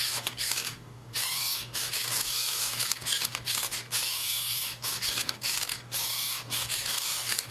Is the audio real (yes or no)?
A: no